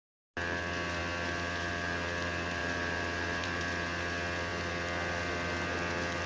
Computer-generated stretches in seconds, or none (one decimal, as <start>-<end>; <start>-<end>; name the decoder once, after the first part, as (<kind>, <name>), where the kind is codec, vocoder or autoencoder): 2.6-3.6 (vocoder, BigVGAN v2)